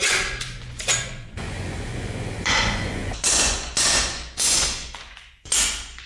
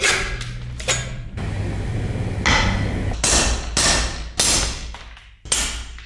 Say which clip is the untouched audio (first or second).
second